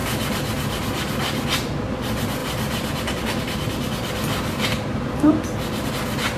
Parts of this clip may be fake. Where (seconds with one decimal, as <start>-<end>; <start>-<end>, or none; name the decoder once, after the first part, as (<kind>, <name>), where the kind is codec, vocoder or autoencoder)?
0.0-1.9 (vocoder, BigVGAN v2); 2.4-5.9